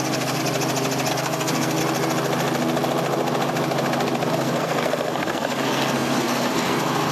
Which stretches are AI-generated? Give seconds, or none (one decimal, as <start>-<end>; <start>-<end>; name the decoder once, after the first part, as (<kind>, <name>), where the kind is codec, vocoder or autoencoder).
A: 0.0-0.4 (codec, SNAC); 1.1-1.8; 4.3-7.1